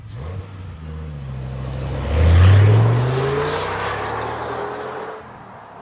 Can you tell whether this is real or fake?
real